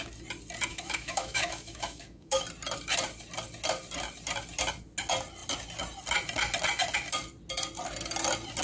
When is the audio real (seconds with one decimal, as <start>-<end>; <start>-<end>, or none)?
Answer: 0.0-0.7; 2.4-8.6